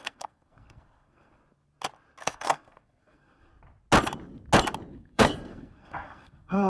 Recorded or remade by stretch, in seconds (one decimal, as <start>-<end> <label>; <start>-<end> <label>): 0.0-1.4 remade; 1.4-2.2 recorded; 2.2-3.5 remade; 3.5-4.9 recorded; 4.9-6.7 remade